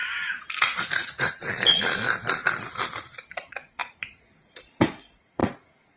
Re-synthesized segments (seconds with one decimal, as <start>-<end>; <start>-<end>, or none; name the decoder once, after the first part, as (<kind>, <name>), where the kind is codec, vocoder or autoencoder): 0.6-1.4 (vocoder, Vocos); 3.3-6.0